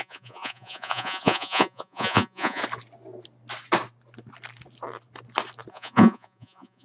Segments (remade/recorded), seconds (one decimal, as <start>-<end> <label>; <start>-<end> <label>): 0.0-2.6 remade; 2.6-5.7 recorded; 5.7-6.8 remade